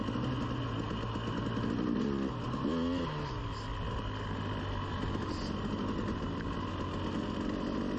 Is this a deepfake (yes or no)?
no